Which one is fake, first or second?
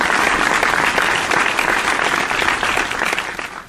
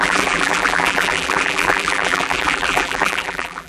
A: second